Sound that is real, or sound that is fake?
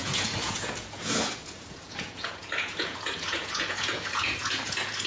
fake